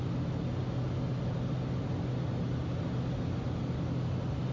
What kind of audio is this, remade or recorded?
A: recorded